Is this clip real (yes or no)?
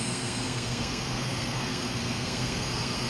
no